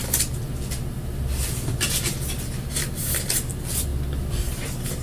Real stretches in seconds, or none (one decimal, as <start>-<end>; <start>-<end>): 0.0-5.0

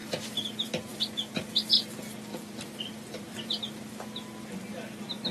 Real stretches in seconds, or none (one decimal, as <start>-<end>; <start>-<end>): 0.9-2.3; 3.6-5.3